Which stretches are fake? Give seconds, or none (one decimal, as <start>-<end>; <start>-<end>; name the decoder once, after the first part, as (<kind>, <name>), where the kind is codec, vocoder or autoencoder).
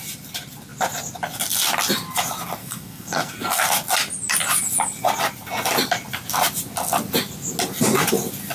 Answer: 2.6-3.6 (codec, SNAC)